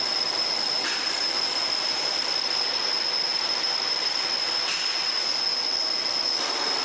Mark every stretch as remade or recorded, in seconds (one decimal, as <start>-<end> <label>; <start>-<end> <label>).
0.0-6.8 recorded